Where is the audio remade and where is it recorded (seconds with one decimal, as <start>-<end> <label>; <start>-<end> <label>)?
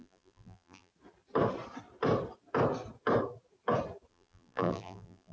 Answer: 0.0-0.9 remade; 0.9-4.1 recorded; 4.1-5.3 remade